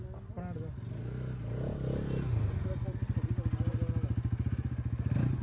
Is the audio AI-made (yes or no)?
no